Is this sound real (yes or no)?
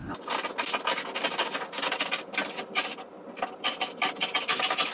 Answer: yes